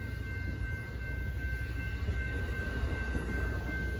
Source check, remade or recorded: recorded